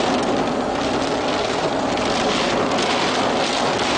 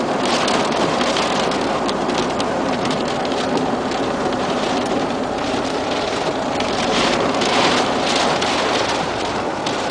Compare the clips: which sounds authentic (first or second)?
first